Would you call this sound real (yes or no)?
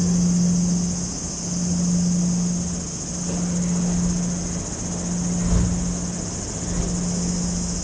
yes